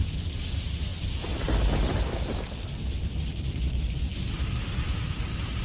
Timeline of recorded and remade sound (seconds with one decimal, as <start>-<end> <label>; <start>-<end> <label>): 0.0-5.6 recorded